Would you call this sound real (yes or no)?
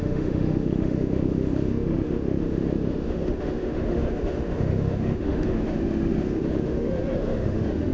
no